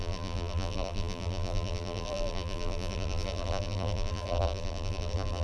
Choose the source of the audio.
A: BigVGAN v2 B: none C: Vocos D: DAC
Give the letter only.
A